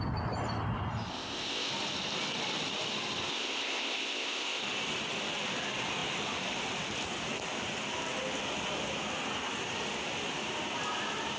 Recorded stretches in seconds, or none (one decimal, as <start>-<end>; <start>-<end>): 0.0-1.1; 1.7-3.3; 4.6-11.4

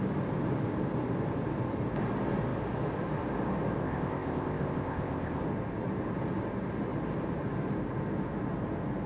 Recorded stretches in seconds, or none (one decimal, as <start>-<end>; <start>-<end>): 0.0-3.8; 5.4-9.1

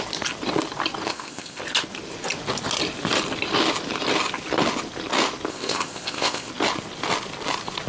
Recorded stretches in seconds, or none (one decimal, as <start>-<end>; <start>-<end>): 0.0-1.1; 1.6-5.5; 6.5-7.9

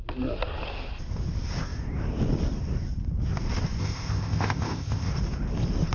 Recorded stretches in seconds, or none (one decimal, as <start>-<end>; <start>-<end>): 0.0-3.8; 5.1-5.9

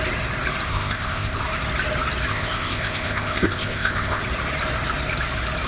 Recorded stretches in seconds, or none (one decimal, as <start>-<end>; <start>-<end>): 0.0-0.7; 1.4-2.3; 4.2-5.7

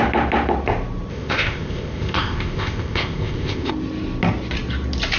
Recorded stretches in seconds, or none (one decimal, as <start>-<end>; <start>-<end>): 0.0-1.1; 3.7-5.2